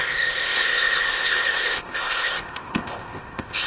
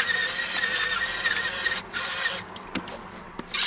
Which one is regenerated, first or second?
first